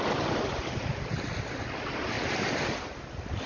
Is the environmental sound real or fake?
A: real